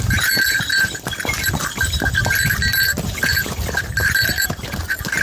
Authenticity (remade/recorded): recorded